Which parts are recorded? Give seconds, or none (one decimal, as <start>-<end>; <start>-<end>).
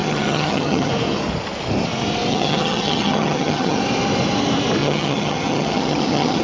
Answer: 0.9-2.3; 3.8-4.8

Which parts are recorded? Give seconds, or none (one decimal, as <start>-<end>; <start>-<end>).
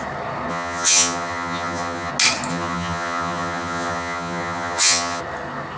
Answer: 0.0-0.5; 2.1-2.5; 5.2-5.8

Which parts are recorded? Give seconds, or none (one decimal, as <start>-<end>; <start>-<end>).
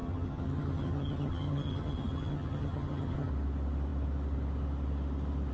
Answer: 3.3-5.5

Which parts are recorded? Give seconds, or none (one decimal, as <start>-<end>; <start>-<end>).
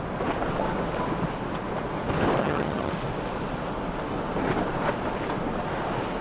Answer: 0.0-2.4; 2.9-6.2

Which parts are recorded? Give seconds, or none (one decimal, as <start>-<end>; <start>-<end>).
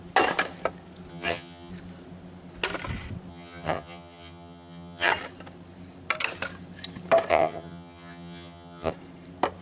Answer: 0.0-1.1; 1.7-3.3; 5.1-7.3; 8.9-9.6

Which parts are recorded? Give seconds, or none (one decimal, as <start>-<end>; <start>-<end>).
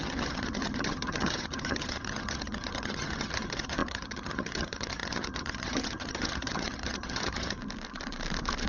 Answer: 7.6-8.7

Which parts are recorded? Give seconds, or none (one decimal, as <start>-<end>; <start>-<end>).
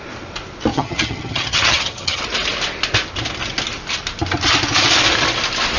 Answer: 0.0-0.7; 2.2-5.8